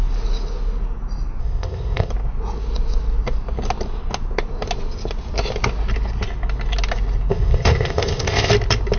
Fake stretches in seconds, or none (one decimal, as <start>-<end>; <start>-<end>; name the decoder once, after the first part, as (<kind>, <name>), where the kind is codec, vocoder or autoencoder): 1.4-2.1 (codec, ZipCodec); 7.3-8.5

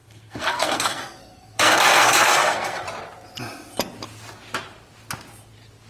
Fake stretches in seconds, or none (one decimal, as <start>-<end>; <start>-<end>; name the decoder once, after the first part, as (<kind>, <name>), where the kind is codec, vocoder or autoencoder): 0.0-2.8 (codec, SNAC)